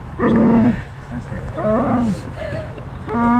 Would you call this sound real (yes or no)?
no